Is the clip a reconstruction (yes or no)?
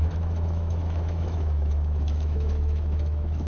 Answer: yes